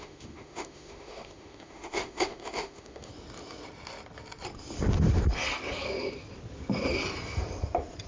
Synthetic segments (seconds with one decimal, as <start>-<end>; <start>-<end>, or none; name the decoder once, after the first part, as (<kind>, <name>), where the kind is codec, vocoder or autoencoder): 0.0-3.1 (autoencoder, DAC-VAE)